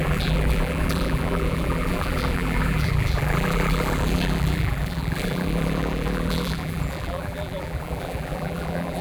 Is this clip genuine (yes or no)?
no